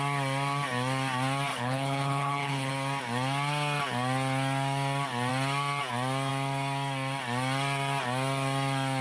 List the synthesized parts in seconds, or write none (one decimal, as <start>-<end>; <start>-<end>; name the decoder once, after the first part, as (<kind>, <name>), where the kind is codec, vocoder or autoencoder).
1.5-2.7 (codec, HILCodec)

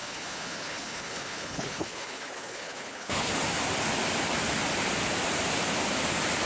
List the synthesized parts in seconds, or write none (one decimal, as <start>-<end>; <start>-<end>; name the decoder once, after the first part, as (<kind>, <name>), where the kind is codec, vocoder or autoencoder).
0.0-3.3 (codec, HILCodec)

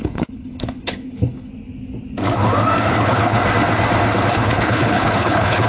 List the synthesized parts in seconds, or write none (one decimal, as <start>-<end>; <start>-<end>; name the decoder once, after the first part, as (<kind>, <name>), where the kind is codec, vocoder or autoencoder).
0.0-1.5 (codec, HILCodec); 2.9-3.4; 4.3-5.7

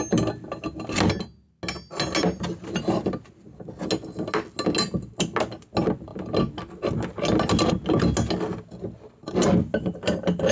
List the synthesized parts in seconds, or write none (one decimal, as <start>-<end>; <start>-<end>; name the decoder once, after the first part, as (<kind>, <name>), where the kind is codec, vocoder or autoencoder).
none

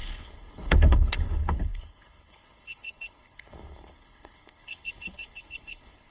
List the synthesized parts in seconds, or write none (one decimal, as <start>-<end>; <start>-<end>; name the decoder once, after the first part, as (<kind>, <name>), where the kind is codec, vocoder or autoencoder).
0.0-6.1 (codec, HILCodec)

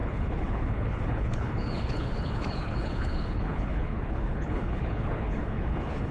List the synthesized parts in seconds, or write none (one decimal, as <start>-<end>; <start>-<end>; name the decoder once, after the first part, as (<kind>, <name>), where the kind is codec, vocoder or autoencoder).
0.0-6.1 (codec, HILCodec)

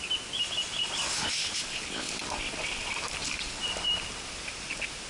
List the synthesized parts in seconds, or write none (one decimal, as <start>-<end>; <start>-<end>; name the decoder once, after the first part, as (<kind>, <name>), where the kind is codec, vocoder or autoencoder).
1.4-2.1 (codec, HILCodec)

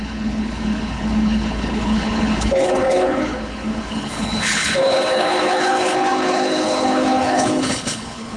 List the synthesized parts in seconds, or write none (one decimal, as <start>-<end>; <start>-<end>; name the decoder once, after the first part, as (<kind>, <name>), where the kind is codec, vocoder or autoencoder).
0.0-8.4 (codec, HILCodec)